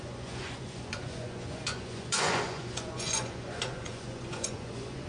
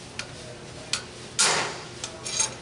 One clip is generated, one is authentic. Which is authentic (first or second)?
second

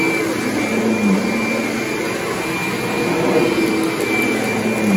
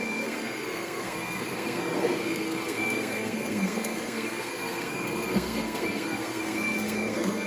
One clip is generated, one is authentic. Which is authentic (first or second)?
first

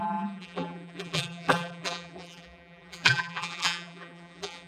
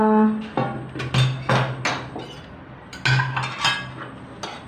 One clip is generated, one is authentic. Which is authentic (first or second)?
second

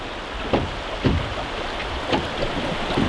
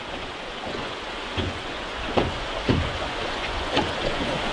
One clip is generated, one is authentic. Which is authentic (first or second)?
first